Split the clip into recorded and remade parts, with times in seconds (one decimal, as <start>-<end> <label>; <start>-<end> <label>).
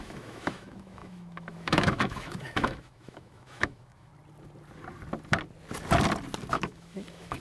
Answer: 0.0-4.1 remade; 4.1-6.5 recorded; 6.5-7.4 remade